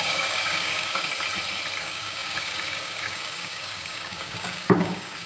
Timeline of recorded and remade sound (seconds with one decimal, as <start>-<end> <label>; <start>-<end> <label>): 0.0-1.1 remade; 1.1-1.8 recorded; 1.8-5.3 remade